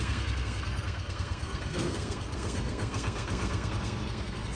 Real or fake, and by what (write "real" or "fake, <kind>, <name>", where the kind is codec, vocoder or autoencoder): fake, codec, SNAC